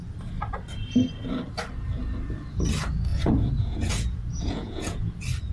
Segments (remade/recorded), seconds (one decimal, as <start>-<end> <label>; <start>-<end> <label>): 0.0-3.1 recorded; 3.1-5.1 remade; 5.1-5.5 recorded